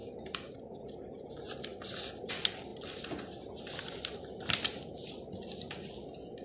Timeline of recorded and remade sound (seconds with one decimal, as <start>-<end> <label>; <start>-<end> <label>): 0.0-6.4 recorded